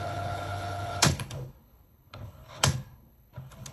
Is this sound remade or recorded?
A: remade